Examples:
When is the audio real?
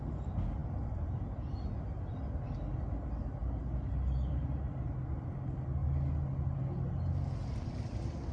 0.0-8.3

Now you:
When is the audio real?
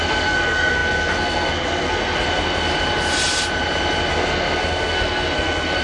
2.7-4.1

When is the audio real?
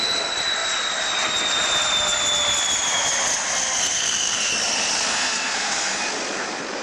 0.0-3.8; 4.5-5.1; 6.0-6.8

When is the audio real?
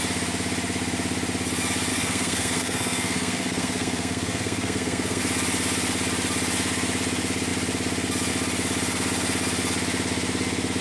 0.0-1.9; 5.2-10.8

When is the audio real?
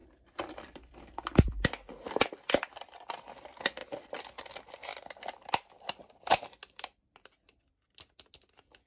0.0-8.9